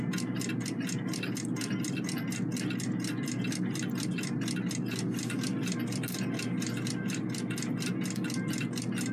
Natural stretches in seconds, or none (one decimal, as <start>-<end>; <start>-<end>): 0.0-9.1